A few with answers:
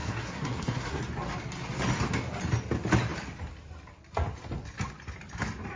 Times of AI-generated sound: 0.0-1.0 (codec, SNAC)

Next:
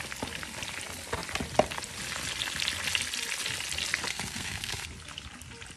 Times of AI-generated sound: 4.1-4.9 (codec, SNAC)

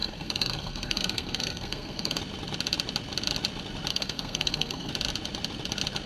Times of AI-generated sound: 0.0-2.2 (codec, SNAC); 3.9-4.9

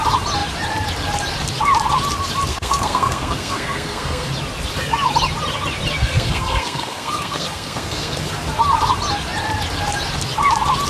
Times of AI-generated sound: 2.5-4.3 (codec, SNAC); 6.0-8.3

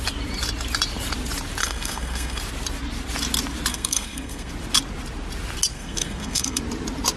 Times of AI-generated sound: 1.6-2.4 (codec, SNAC); 3.7-4.5; 5.7-6.6

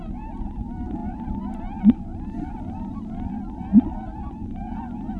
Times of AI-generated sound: none

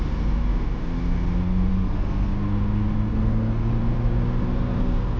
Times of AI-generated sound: 1.7-2.3 (codec, SNAC); 3.1-3.8

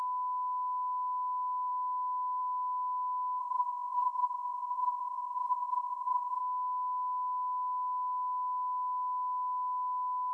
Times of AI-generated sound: 3.4-6.4 (codec, SNAC)